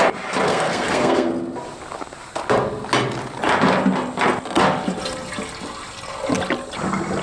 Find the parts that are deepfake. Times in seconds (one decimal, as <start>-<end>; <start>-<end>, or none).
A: 0.5-1.3